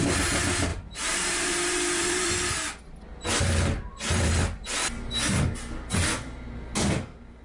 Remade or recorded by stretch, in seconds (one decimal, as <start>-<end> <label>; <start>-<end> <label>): 0.0-0.7 recorded; 0.7-2.3 remade; 2.3-7.4 recorded